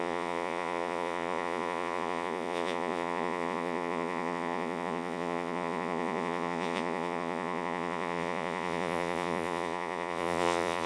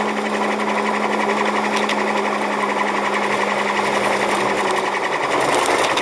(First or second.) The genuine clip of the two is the second